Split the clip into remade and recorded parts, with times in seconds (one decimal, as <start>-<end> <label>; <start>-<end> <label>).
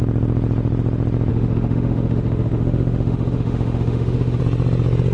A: 0.0-1.3 recorded; 1.3-4.4 remade; 4.4-5.1 recorded